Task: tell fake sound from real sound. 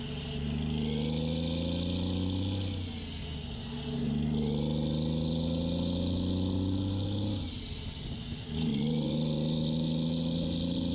real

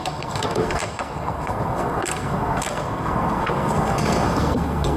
fake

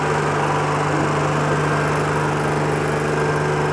real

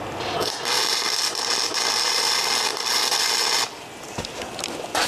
fake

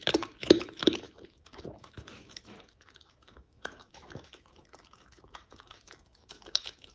fake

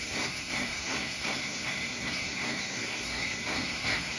fake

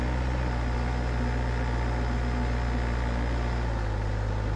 real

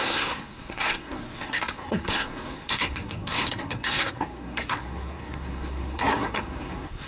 fake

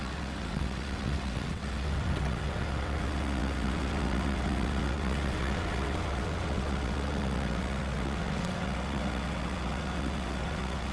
fake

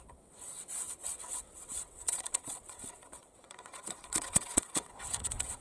fake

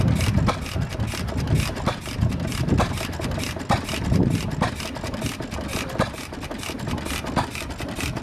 real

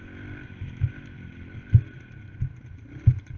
real